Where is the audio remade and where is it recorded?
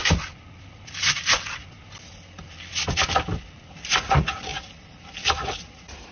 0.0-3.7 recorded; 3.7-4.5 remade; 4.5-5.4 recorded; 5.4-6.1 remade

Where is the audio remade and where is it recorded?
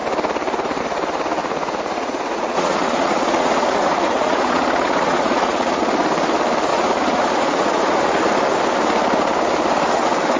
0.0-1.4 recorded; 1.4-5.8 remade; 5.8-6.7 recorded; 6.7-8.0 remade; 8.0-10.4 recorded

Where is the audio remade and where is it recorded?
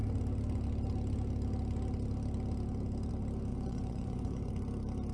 0.0-3.5 recorded; 3.5-4.5 remade; 4.5-5.1 recorded